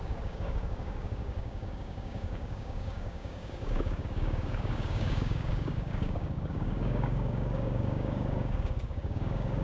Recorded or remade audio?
remade